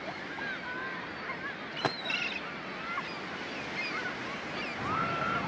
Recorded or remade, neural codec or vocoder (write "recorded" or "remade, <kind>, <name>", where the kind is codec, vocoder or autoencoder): recorded